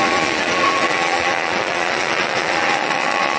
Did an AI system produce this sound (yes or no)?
yes